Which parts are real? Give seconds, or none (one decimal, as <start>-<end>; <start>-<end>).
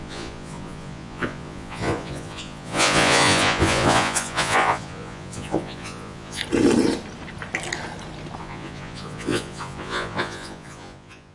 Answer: 6.4-8.4